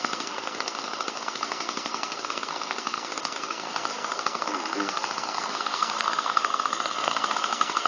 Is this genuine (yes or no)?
no